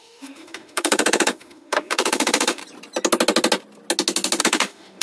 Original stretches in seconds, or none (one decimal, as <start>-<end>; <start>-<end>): 2.6-4.4